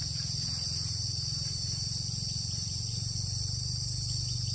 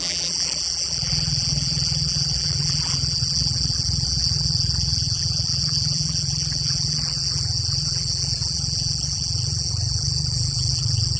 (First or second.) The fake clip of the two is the second